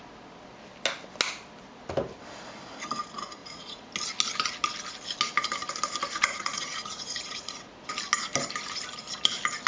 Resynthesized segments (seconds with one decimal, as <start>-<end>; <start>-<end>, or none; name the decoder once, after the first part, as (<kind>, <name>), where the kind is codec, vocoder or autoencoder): 3.4-3.9 (vocoder, Vocos); 6.0-7.9

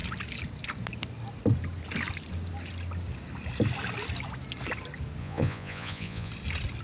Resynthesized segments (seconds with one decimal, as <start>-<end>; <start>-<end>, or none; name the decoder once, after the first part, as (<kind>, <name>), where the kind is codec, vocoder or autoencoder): 5.2-6.3 (vocoder, Vocos)

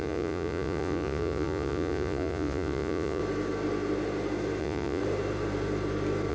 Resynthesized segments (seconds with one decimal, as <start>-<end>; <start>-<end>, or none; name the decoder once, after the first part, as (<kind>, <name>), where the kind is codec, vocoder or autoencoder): 0.0-3.2 (vocoder, Vocos); 4.6-5.0

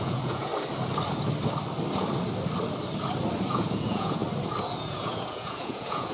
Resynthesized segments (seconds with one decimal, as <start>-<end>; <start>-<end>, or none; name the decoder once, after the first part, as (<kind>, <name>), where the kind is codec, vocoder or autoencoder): 0.0-0.5 (vocoder, Vocos); 3.5-4.2; 4.8-6.1

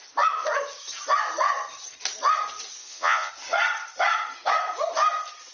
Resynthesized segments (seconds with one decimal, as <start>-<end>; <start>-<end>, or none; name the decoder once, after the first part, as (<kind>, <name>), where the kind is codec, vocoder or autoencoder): 2.8-3.3 (vocoder, Vocos)

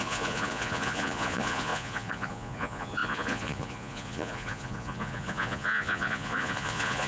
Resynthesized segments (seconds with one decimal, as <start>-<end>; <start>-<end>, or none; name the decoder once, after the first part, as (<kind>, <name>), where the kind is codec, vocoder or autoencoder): 0.0-7.1 (vocoder, Vocos)